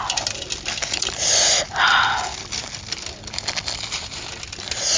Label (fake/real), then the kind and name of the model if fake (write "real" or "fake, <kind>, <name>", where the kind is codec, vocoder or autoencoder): real